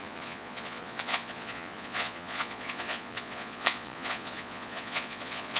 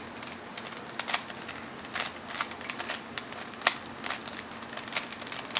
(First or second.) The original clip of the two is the second